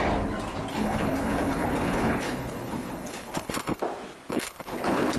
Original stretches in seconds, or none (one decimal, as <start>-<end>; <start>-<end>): 0.0-0.7; 3.8-4.3